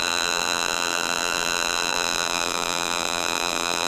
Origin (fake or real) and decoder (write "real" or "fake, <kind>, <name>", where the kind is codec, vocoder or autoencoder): fake, vocoder, BigVGAN v2